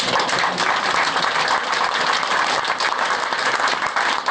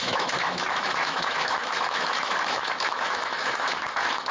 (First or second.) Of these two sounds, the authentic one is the first